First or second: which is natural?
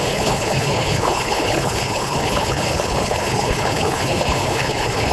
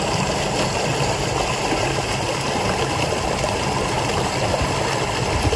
second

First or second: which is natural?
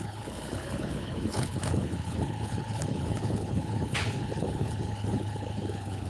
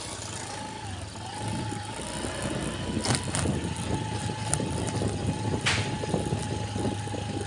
second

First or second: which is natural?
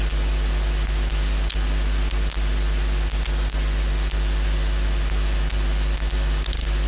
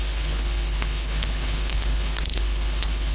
first